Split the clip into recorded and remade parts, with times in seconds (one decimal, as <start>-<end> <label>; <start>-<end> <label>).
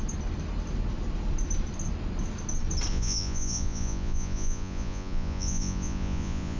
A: 0.0-2.9 recorded; 2.9-6.6 remade